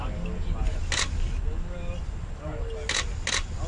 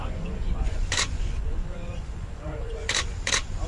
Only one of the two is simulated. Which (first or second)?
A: second